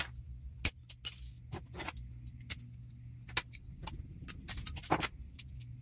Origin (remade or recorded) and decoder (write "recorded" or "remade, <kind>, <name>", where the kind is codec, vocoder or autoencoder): recorded